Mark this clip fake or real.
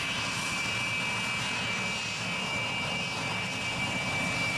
real